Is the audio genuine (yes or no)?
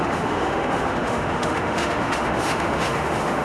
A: no